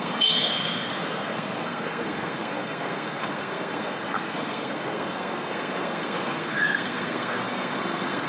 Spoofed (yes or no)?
yes